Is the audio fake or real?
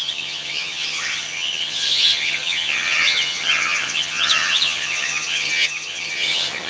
fake